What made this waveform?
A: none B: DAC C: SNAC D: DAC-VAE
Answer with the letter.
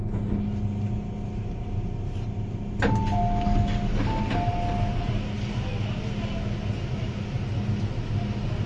A